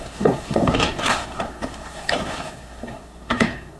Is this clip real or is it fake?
fake